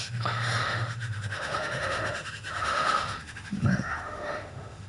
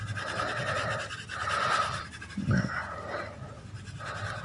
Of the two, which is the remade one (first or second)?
first